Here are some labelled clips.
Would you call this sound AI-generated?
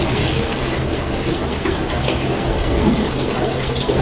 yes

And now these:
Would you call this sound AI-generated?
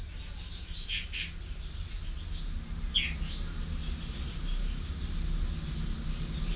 no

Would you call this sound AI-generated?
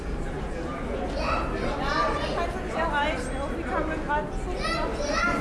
no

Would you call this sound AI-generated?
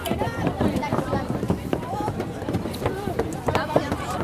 yes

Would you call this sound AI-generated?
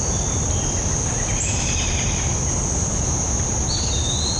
no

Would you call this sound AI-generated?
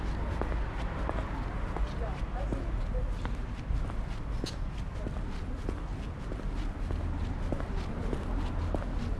no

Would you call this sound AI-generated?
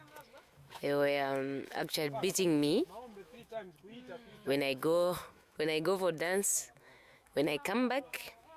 yes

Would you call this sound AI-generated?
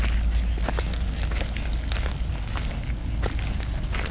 no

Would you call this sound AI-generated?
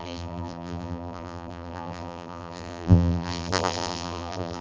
yes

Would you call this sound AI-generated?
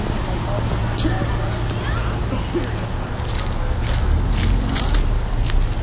no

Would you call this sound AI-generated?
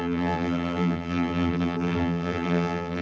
yes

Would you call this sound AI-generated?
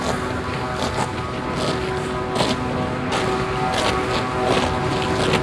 no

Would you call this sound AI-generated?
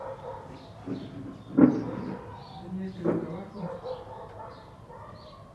no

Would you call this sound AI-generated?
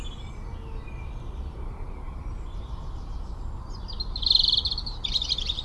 no